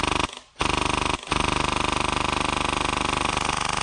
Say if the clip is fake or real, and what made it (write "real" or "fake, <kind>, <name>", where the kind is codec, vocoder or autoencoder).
real